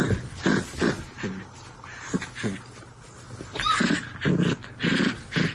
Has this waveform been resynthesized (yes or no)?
no